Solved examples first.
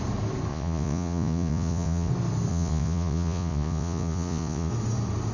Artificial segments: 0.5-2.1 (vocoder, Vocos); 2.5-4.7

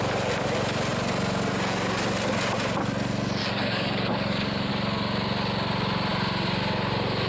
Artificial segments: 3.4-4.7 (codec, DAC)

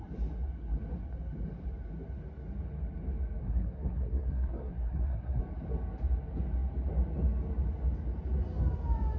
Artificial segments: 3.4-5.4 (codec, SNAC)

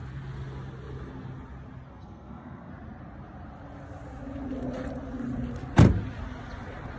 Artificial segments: 1.9-2.7 (codec, SNAC)

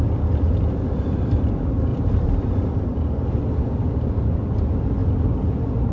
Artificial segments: 1.9-2.7 (vocoder, BigVGAN v2); 5.0-5.9

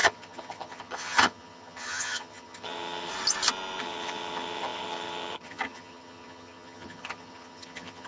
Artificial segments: 0.0-3.1 (vocoder, HiFi-GAN); 3.8-8.1